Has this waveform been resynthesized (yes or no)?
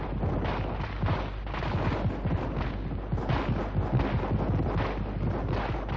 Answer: no